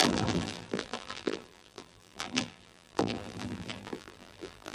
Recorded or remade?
remade